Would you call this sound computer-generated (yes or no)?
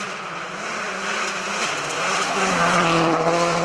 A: no